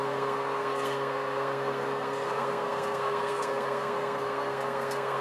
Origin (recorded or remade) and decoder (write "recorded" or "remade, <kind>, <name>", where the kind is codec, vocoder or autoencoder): remade, codec, SNAC